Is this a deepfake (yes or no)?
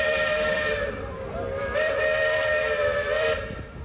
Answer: yes